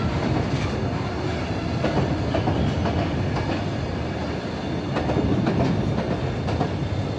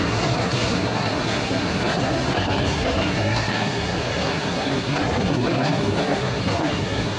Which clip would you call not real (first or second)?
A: second